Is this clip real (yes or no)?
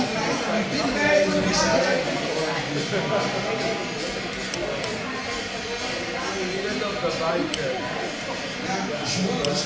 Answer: yes